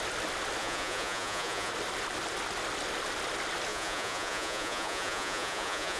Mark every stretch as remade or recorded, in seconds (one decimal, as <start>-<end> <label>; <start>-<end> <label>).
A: 0.0-0.6 recorded; 0.6-1.7 remade; 1.7-3.7 recorded; 3.7-6.0 remade